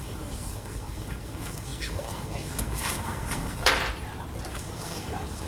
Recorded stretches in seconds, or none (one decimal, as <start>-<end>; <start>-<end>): 3.7-4.5